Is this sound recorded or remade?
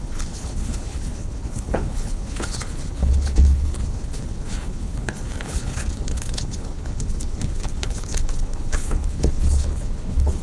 remade